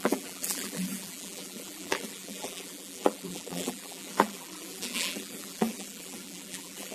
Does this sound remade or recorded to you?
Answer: remade